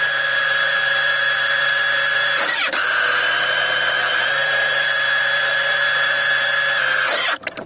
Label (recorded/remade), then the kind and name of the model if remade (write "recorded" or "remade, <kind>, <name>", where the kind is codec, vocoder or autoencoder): remade, vocoder, BigVGAN v2